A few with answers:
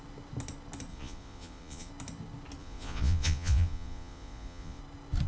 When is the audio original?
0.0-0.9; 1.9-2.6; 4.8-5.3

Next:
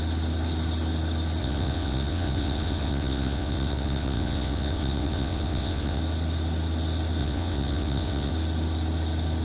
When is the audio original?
0.0-1.4; 6.0-7.2; 8.3-9.4